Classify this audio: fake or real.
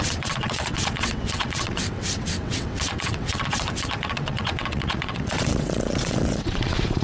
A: fake